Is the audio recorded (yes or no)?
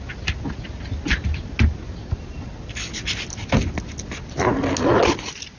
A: yes